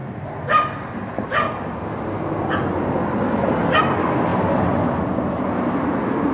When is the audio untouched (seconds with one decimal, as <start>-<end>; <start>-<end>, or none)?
0.0-6.3